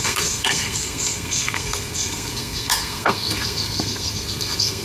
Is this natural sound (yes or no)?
no